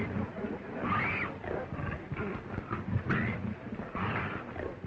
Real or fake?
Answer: real